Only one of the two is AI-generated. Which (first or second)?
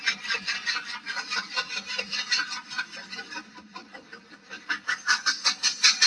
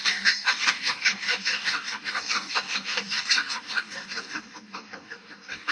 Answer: second